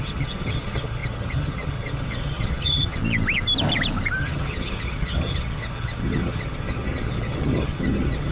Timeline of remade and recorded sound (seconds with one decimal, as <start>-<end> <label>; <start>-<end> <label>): 0.0-3.0 remade; 3.0-4.2 recorded; 4.2-8.3 remade